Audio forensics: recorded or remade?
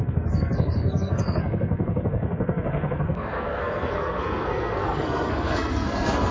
remade